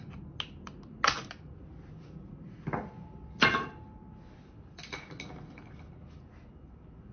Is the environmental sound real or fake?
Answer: real